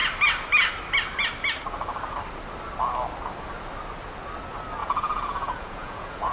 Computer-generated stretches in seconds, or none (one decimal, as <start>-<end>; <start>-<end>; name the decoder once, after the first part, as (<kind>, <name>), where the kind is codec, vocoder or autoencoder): 4.8-6.3 (vocoder, Vocos)